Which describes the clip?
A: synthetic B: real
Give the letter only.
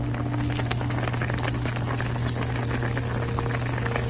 B